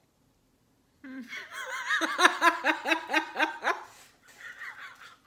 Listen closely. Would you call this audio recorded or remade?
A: recorded